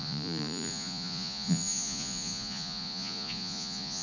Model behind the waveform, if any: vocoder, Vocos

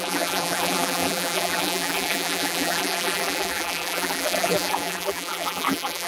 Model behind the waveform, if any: vocoder, BigVGAN v2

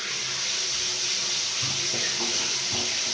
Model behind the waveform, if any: none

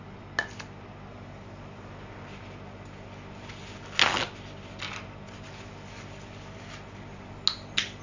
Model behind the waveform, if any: none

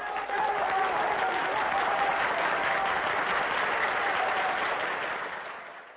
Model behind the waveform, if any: none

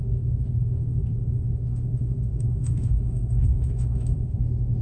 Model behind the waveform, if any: autoencoder, DAC-VAE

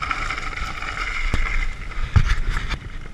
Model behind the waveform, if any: none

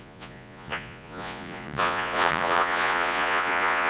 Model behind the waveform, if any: vocoder, Vocos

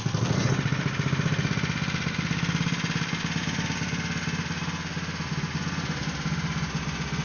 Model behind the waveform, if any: none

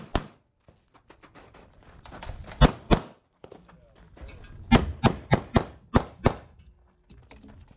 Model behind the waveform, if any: none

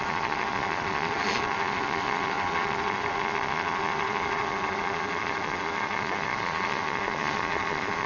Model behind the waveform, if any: vocoder, Vocos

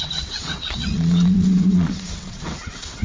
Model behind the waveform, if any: vocoder, WaveNeXt